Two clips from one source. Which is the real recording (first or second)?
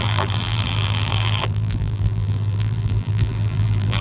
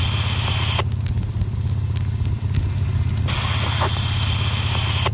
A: second